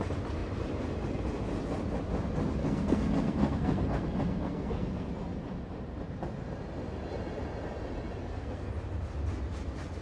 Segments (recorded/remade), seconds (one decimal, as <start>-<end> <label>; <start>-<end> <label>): 0.0-2.6 recorded; 2.6-5.1 remade; 5.1-8.2 recorded; 8.2-8.7 remade; 8.7-10.0 recorded